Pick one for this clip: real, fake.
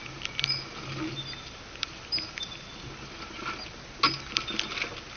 real